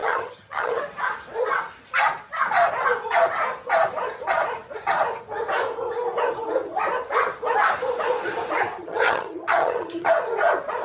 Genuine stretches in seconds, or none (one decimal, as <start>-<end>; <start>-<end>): 0.8-8.8; 10.1-10.8